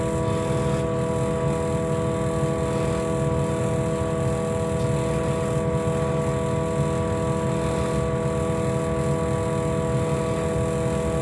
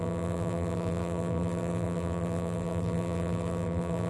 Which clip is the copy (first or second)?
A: second